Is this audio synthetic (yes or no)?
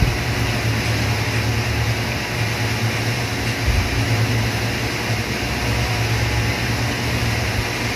no